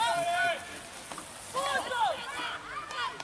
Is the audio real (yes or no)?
yes